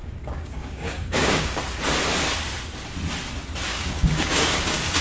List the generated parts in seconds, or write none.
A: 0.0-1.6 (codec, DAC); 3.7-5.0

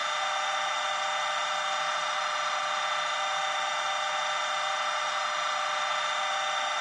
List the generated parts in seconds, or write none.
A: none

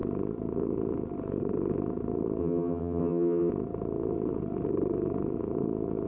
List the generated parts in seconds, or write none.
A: 2.4-3.5 (vocoder, HiFi-GAN)

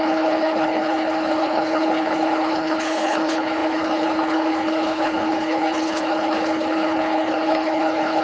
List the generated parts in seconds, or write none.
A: 0.0-8.2 (codec, HILCodec)

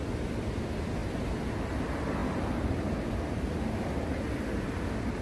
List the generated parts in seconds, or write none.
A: none